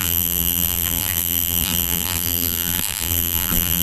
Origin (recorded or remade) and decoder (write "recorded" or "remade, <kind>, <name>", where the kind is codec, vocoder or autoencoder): remade, vocoder, BigVGAN v2